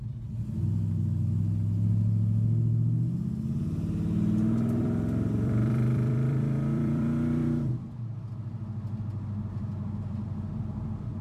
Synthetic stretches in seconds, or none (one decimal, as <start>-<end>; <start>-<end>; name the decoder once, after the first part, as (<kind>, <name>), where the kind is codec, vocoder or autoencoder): 4.8-7.7 (vocoder, BigVGAN v2)